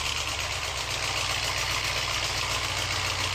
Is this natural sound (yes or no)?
yes